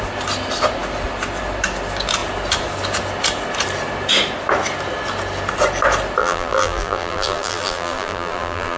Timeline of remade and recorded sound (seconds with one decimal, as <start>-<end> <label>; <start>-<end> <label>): 0.0-6.2 recorded; 6.2-8.8 remade